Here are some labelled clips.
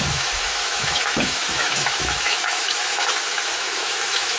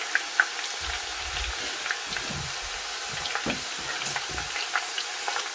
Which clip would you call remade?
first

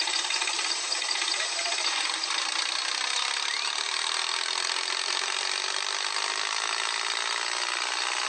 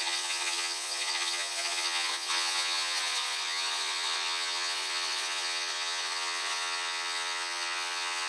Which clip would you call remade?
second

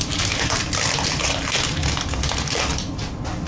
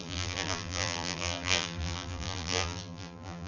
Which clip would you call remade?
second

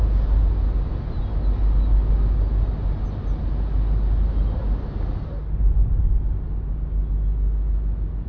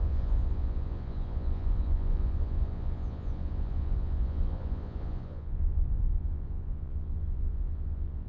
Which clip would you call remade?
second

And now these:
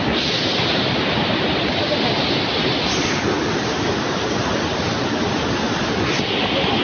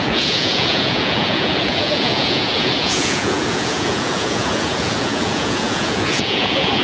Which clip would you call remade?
second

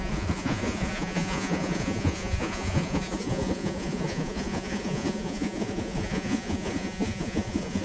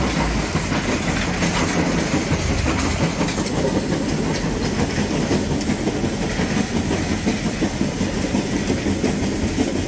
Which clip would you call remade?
first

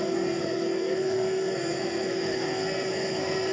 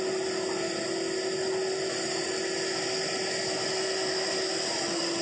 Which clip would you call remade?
first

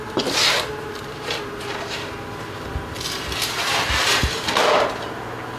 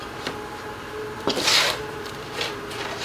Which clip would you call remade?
second